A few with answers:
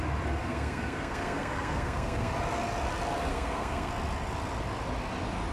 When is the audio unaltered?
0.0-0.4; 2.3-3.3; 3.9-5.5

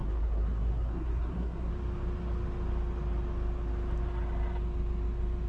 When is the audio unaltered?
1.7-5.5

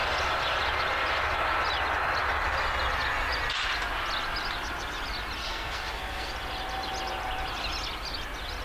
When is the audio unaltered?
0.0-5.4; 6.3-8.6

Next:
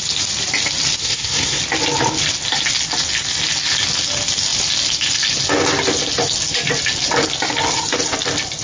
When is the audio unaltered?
0.0-1.0; 1.6-8.6

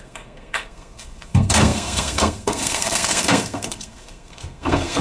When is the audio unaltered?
none

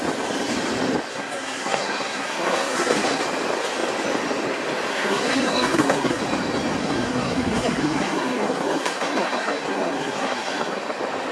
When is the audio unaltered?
0.0-1.1; 3.2-4.9; 6.2-6.8; 10.8-11.3

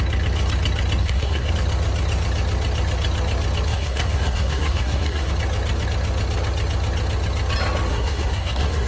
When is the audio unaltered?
0.0-1.0; 1.5-3.7; 5.3-7.9